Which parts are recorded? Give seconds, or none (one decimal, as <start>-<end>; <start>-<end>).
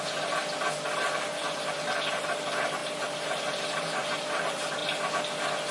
0.4-1.2; 4.8-5.7